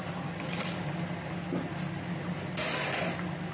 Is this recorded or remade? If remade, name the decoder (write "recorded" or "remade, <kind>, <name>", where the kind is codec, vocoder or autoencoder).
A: recorded